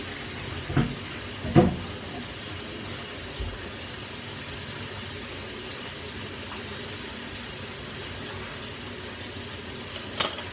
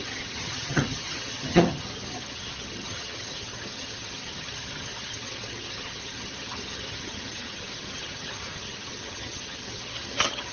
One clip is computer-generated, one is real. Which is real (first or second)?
first